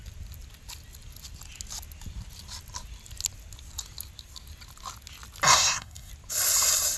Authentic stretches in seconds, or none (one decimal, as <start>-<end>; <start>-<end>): 0.0-5.5; 6.1-7.0